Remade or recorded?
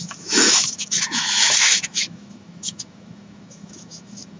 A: remade